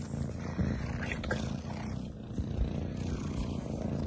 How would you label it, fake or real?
real